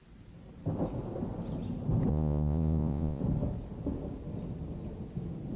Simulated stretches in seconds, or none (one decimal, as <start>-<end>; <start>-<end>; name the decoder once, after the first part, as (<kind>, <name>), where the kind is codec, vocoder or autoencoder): 2.1-3.2 (vocoder, Vocos)